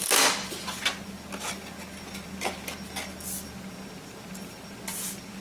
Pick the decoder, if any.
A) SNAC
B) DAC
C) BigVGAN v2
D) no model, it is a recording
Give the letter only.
D